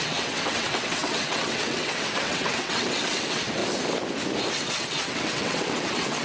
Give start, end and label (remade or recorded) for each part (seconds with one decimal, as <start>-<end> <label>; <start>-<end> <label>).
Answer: 0.0-3.6 remade; 3.6-4.5 recorded; 4.5-6.2 remade